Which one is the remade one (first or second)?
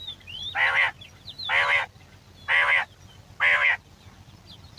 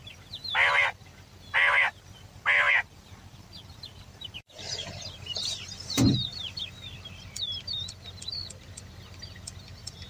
second